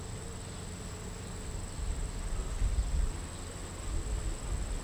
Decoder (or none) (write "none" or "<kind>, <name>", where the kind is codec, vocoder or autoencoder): none